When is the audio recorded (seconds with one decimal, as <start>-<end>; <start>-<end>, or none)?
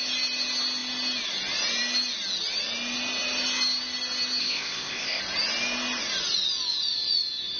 0.0-4.4; 5.2-7.6